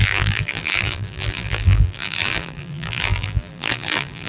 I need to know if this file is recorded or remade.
remade